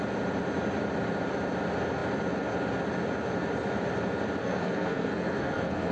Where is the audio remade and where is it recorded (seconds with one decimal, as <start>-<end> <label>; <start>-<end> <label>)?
0.0-4.4 recorded; 4.4-5.9 remade